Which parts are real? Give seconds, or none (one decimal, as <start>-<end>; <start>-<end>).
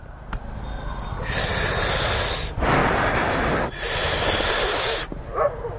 0.0-5.8